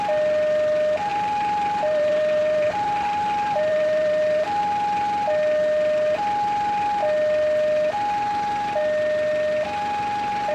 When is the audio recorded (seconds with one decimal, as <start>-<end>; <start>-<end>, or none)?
0.0-1.1; 4.6-10.5